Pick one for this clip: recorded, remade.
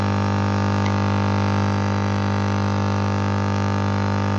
remade